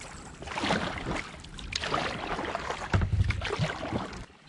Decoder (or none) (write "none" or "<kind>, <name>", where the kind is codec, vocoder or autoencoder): none